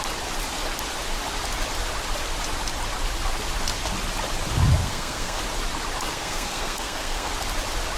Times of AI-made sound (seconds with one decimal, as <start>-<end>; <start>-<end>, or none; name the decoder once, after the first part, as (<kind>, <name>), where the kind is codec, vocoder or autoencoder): 4.8-5.4 (codec, SNAC); 6.1-7.3